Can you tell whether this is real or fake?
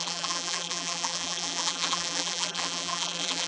fake